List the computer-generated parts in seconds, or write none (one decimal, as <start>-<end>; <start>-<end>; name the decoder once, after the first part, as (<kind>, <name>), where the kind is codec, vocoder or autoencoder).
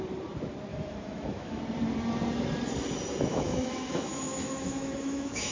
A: 0.7-1.6 (autoencoder, DAC-VAE); 3.3-5.5